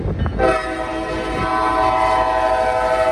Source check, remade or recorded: recorded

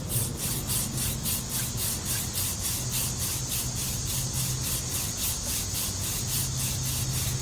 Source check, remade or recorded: recorded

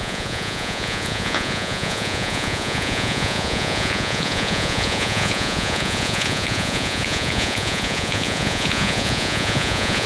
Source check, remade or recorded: remade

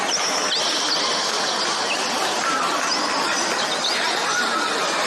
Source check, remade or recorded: recorded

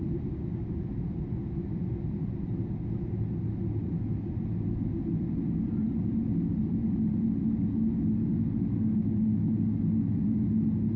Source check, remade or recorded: recorded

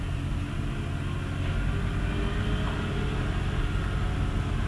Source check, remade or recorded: recorded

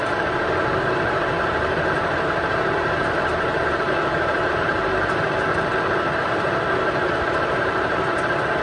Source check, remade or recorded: remade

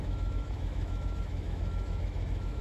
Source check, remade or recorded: remade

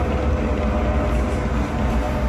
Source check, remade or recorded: recorded